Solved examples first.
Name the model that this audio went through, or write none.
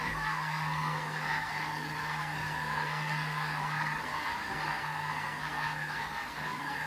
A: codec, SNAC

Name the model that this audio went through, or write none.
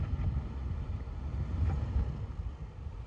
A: none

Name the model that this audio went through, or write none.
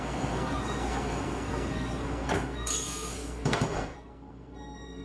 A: codec, SNAC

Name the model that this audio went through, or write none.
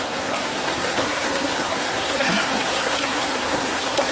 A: codec, SNAC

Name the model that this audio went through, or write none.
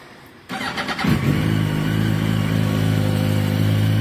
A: none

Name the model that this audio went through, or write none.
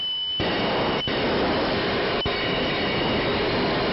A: none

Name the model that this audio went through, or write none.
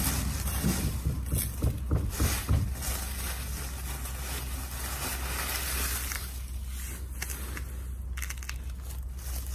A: none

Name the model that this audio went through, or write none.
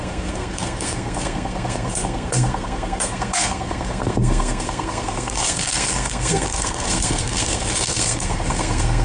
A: codec, SNAC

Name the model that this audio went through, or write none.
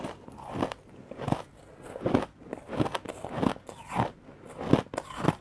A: none